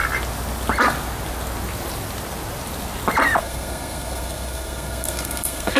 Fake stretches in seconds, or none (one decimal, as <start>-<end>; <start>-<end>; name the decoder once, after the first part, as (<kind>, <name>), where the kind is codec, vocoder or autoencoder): 3.4-5.8 (codec, SNAC)